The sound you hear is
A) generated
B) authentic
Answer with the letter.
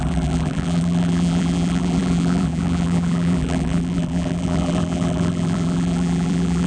A